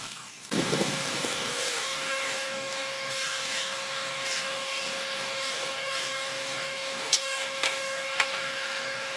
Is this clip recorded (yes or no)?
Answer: no